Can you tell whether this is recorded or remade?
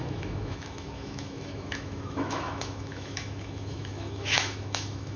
remade